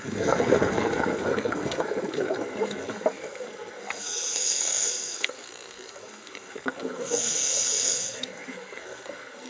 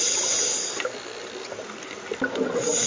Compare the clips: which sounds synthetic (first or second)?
first